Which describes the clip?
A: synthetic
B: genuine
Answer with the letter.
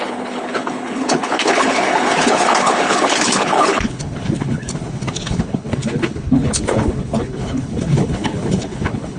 A